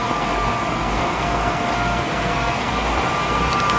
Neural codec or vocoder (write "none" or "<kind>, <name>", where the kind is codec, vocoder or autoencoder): codec, SNAC